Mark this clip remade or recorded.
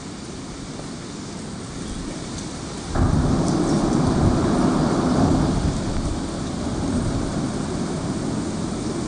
recorded